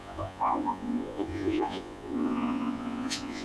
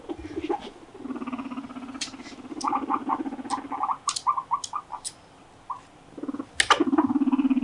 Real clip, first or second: second